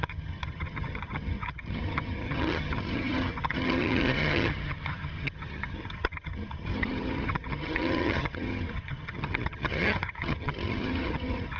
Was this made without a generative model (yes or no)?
no